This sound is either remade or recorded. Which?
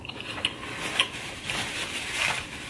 recorded